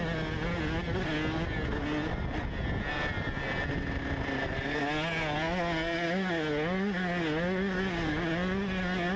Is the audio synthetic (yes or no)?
no